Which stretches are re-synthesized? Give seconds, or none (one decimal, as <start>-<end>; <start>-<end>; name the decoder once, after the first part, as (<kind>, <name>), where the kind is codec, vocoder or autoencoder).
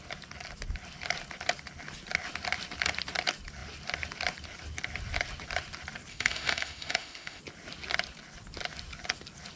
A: 6.1-7.4 (autoencoder, DAC-VAE)